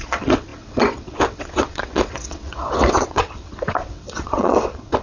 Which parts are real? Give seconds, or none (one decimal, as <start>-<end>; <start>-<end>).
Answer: none